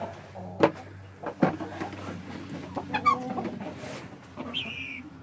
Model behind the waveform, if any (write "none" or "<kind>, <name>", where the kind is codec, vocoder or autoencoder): none